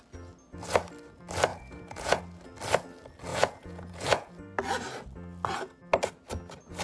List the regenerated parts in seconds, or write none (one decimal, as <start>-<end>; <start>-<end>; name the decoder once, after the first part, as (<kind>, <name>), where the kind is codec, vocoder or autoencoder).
1.5-2.2 (vocoder, Vocos); 3.3-4.3